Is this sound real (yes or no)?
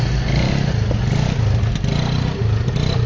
yes